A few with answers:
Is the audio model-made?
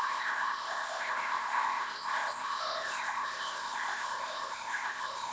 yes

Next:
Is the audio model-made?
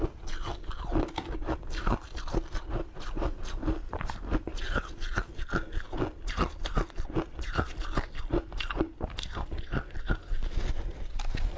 no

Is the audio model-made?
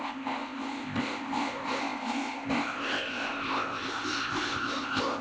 yes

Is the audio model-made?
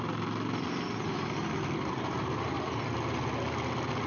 no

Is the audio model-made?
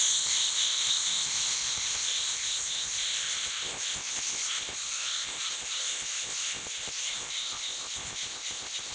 yes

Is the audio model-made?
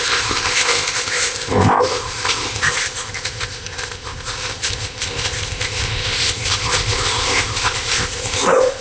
yes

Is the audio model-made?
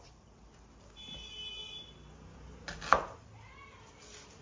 no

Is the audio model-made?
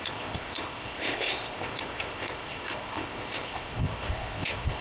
yes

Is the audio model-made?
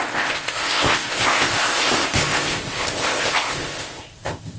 yes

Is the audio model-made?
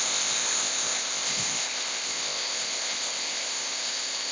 yes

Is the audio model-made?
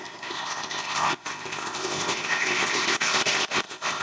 yes